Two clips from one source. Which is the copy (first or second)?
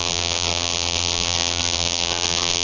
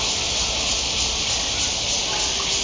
first